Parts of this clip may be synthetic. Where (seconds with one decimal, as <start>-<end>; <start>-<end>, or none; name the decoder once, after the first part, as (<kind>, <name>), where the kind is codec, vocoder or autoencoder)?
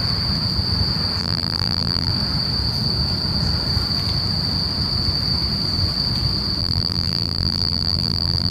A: 1.2-2.1 (vocoder, BigVGAN v2); 6.6-8.5